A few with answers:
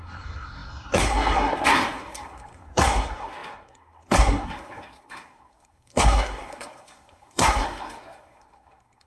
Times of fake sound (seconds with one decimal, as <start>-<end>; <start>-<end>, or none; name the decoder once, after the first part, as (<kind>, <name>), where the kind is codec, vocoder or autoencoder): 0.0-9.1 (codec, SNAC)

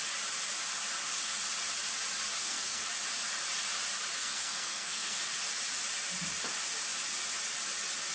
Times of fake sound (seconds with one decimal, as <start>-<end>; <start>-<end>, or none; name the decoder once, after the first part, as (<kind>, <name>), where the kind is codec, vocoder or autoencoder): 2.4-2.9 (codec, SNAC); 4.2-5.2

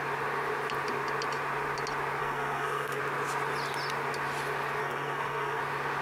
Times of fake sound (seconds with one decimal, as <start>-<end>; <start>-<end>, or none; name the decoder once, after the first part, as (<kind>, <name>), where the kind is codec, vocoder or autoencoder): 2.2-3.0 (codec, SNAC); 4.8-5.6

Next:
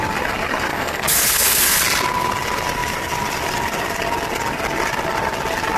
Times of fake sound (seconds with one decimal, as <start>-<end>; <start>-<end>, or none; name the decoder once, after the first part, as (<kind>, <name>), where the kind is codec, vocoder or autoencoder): 0.7-1.8 (codec, SNAC)

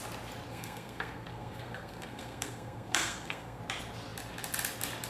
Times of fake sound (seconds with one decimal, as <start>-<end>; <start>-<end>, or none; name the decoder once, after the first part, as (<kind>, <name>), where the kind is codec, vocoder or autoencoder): 0.5-3.6 (codec, SNAC)

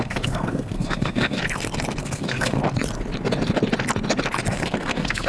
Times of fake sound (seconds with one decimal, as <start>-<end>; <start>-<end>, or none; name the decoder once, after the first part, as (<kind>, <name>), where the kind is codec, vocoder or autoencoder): 0.0-1.4 (codec, SNAC); 2.0-2.6; 4.5-5.3